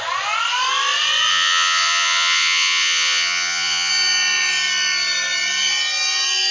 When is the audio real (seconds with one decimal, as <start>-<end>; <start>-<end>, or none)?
0.0-1.3; 3.9-6.5